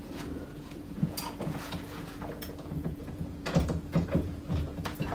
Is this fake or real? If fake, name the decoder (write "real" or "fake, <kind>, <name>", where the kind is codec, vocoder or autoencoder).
fake, vocoder, Vocos